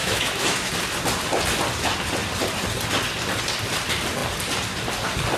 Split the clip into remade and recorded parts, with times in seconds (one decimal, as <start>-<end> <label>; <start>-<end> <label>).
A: 0.0-0.7 remade; 0.7-5.4 recorded